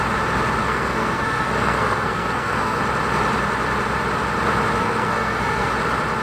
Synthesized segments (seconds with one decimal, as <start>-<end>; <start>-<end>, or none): 0.6-2.8; 4.8-5.7